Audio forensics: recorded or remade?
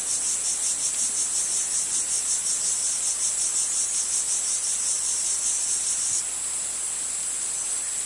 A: recorded